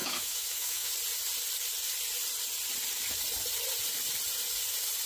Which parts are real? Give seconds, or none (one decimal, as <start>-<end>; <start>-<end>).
0.9-5.1